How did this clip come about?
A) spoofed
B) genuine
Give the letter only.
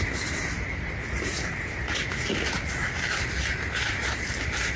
B